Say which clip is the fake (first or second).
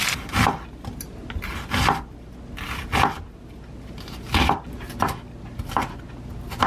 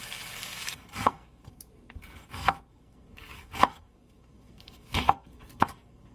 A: second